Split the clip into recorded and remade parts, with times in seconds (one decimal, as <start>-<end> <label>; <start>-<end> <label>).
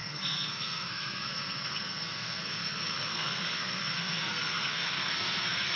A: 0.0-5.8 remade